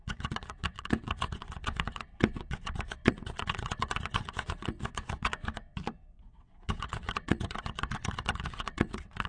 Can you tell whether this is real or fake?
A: fake